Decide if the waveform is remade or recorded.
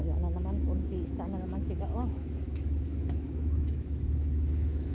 remade